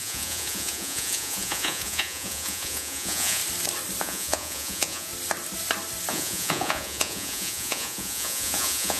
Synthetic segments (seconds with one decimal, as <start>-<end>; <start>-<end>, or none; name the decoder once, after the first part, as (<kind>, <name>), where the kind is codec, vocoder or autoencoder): 0.0-3.4 (vocoder, Vocos); 4.0-5.1; 6.1-9.0